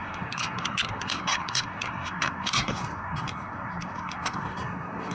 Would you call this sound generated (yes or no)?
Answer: yes